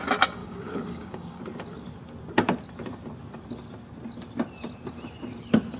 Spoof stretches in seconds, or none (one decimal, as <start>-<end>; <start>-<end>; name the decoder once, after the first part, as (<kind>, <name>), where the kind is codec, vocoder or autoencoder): 0.4-1.4 (codec, DAC)